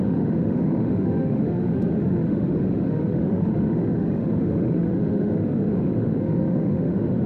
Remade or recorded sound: remade